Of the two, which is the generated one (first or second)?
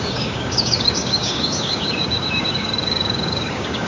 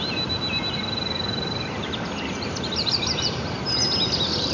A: first